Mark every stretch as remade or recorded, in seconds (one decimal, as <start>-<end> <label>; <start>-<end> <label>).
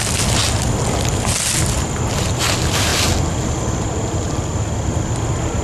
0.0-5.6 recorded